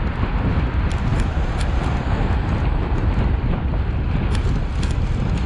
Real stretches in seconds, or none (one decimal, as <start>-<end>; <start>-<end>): 0.0-5.5